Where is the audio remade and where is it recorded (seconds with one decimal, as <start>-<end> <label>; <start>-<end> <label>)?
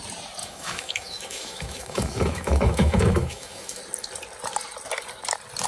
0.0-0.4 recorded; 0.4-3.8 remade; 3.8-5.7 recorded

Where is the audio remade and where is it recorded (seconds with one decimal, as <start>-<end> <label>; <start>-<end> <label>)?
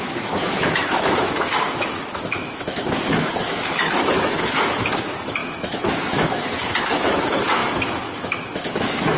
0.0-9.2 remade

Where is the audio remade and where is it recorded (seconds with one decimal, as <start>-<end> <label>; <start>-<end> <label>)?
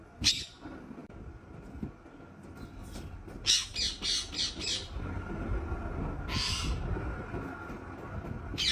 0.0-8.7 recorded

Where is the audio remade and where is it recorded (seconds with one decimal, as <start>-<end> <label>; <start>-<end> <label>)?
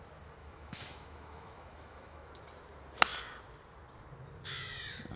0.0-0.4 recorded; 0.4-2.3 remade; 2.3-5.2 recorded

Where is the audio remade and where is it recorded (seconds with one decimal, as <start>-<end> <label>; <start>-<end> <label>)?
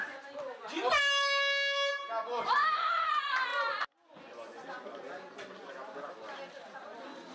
0.0-1.0 recorded; 1.0-1.9 remade; 1.9-2.6 recorded; 2.6-3.1 remade; 3.1-7.3 recorded